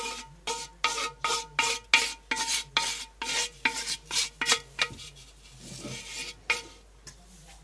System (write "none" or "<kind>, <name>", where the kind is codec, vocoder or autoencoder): none